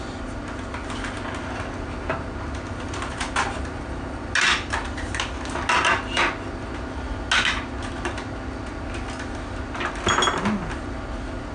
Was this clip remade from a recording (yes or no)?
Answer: no